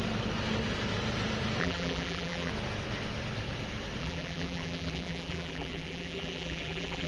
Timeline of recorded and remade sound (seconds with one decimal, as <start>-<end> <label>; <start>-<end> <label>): 0.0-1.6 recorded; 1.6-2.5 remade; 2.5-4.0 recorded; 4.0-7.1 remade